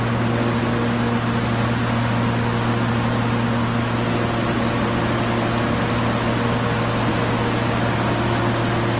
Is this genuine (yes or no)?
yes